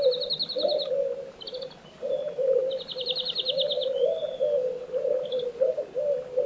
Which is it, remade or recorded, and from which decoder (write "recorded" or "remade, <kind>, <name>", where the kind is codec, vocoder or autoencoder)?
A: recorded